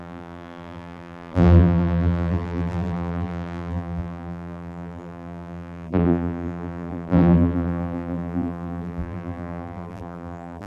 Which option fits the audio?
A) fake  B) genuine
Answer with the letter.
A